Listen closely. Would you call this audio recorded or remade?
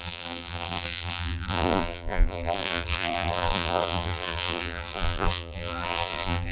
remade